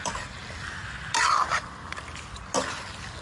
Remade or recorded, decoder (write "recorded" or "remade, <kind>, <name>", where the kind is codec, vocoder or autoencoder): recorded